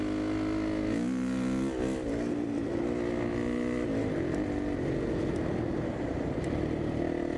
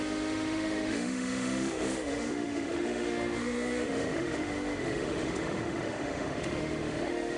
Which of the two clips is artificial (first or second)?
second